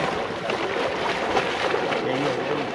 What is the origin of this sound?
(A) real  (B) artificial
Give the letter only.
A